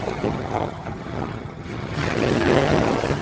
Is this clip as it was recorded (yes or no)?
no